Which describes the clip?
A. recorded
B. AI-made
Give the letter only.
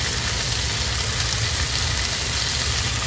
A